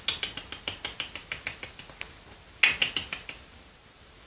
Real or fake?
real